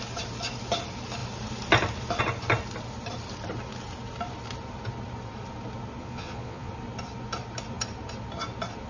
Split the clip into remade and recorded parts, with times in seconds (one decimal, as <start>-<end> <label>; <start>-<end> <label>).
0.0-6.0 recorded; 6.0-6.7 remade; 6.7-8.9 recorded